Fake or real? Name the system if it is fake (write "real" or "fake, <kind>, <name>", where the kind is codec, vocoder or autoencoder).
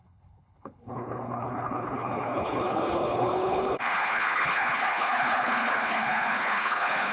fake, codec, HILCodec